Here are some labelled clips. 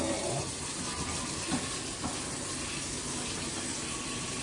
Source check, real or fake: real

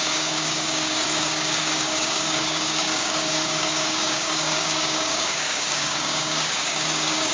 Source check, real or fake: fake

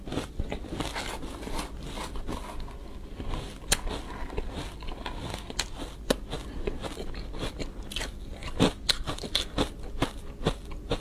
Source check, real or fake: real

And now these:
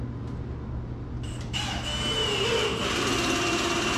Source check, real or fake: real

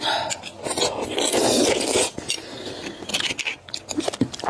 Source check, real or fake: real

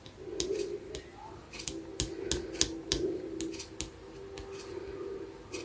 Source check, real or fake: real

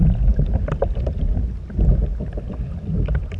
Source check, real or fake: real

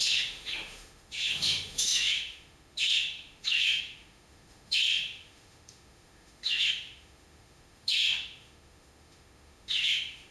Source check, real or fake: fake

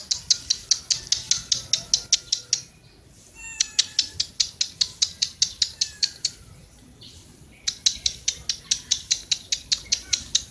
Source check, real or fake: real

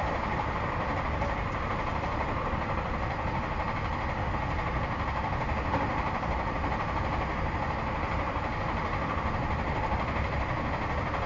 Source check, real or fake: real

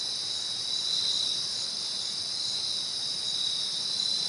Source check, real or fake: real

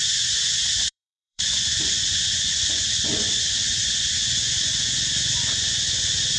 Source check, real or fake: fake